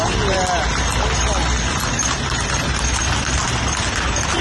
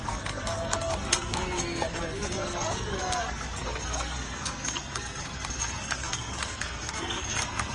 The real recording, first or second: first